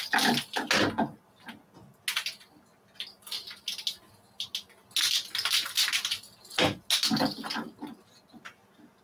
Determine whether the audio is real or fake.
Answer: real